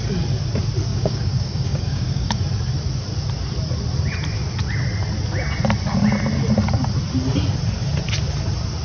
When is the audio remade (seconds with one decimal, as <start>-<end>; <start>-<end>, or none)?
0.9-2.4